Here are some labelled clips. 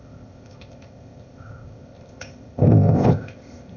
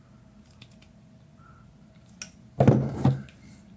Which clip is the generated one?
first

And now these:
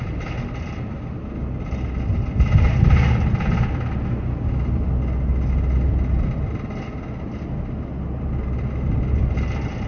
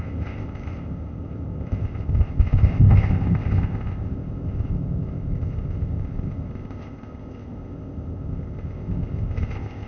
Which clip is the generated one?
second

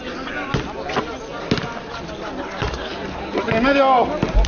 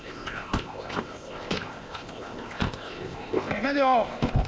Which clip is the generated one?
second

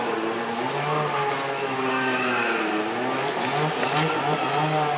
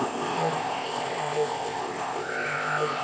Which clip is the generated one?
second